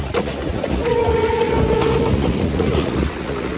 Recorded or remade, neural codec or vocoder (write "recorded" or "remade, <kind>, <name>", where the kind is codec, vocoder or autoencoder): remade, vocoder, Vocos